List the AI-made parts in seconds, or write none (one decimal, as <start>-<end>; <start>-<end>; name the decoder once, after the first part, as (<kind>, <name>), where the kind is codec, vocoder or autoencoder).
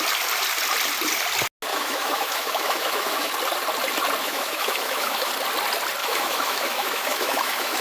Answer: 1.7-3.3 (autoencoder, DAC-VAE); 4.2-5.3; 6.0-7.8